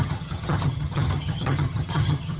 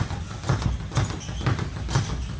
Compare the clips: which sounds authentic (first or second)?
second